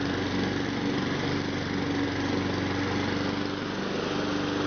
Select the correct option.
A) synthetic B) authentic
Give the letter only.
B